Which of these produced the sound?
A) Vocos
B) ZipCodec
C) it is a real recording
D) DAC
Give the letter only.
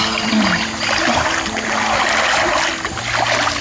C